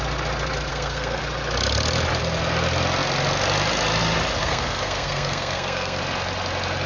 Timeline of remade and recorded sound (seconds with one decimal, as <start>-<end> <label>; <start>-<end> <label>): 0.0-0.7 recorded; 0.7-1.2 remade; 1.2-4.4 recorded; 4.4-6.0 remade; 6.0-6.9 recorded